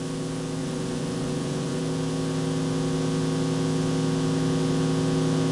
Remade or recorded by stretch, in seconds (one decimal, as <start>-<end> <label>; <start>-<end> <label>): 0.0-0.6 recorded; 0.6-1.8 remade; 1.8-5.5 recorded